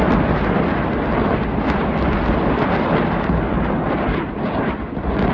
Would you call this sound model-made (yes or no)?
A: no